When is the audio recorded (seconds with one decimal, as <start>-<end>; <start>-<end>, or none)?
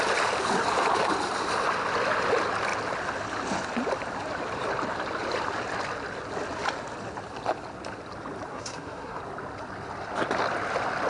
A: 0.0-8.5; 9.2-11.1